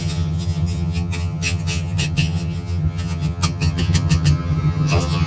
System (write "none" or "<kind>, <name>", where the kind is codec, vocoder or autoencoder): vocoder, HiFi-GAN